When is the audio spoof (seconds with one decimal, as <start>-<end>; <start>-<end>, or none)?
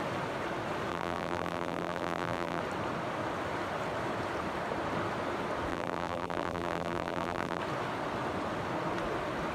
0.9-2.6; 5.7-7.6